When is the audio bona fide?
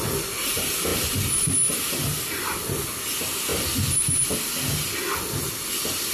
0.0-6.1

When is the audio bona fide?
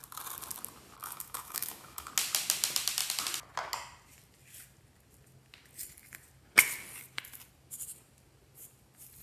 0.0-1.0; 2.1-9.2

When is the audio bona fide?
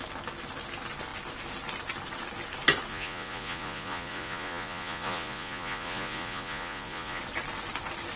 0.0-2.9; 7.2-8.2